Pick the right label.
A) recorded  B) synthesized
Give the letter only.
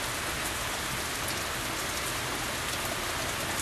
A